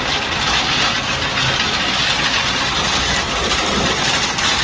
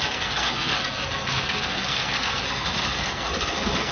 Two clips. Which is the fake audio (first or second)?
second